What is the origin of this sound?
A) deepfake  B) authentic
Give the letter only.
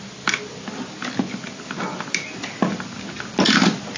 B